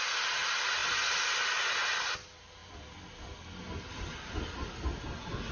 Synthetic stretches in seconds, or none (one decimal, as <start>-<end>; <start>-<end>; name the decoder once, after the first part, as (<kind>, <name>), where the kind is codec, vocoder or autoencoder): none